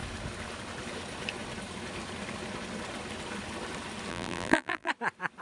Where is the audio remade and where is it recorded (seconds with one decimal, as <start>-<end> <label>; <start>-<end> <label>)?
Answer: 0.0-4.1 recorded; 4.1-4.9 remade; 4.9-5.4 recorded